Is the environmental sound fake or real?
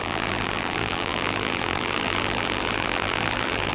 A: fake